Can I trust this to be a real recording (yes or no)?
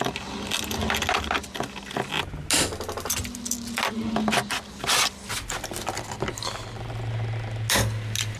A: yes